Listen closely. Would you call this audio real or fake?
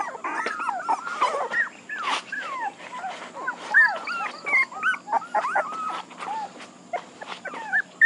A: real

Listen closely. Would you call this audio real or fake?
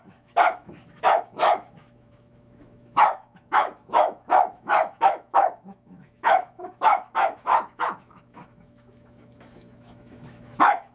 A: fake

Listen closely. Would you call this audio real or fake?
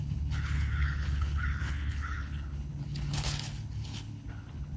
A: fake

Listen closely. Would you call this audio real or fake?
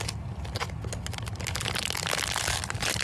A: real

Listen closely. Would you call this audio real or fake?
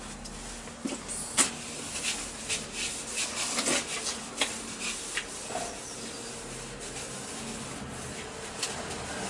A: real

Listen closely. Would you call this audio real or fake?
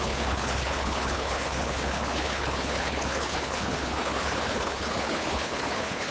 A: fake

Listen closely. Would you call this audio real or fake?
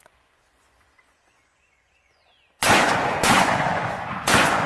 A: fake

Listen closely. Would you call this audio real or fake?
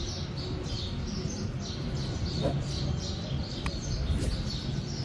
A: real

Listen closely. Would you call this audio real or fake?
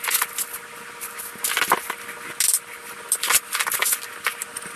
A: real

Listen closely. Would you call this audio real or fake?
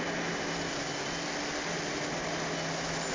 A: real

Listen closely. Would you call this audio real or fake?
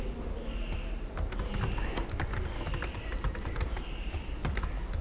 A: real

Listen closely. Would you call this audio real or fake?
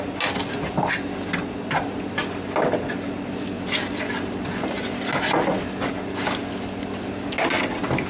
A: real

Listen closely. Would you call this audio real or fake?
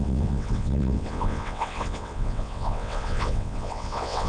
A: fake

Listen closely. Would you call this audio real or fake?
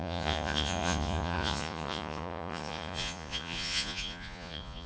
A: fake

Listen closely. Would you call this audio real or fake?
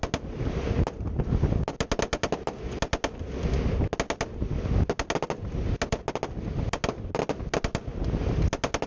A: real